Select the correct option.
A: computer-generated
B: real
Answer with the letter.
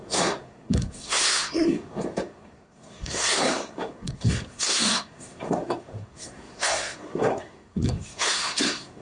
A